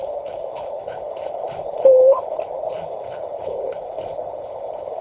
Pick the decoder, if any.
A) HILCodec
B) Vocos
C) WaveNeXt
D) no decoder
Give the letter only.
A